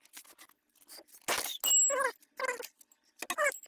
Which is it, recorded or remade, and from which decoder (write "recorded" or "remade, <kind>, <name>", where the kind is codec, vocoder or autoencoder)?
recorded